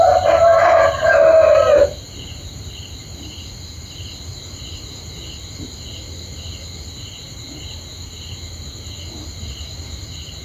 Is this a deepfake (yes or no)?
no